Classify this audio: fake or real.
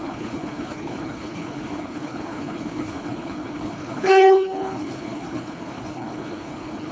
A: fake